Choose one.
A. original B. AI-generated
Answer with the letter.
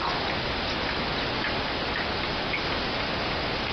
A